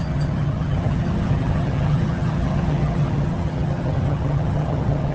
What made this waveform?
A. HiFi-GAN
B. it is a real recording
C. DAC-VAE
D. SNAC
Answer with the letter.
A